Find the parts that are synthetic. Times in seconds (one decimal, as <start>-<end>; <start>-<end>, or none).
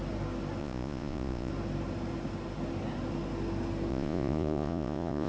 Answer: 0.6-1.5; 3.9-5.3